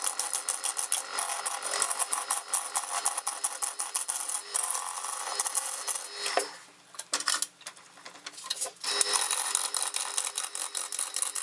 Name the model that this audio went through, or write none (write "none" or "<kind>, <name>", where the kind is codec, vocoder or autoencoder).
none